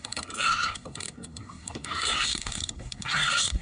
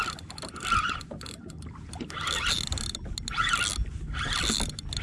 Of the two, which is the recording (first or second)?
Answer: second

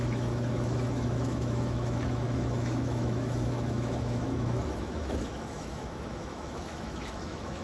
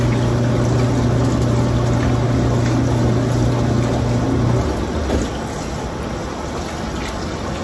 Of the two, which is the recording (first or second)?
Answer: second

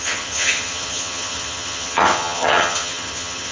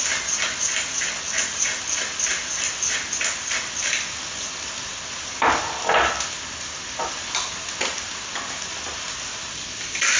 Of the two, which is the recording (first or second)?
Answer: second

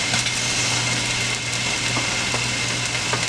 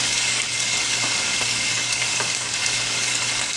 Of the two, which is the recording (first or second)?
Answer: first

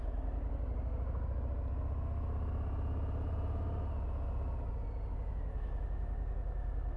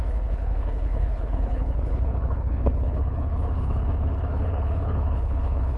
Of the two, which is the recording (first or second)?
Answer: first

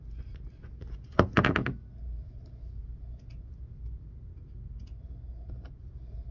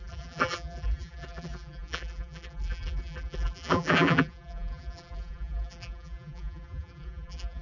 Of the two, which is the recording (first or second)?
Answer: first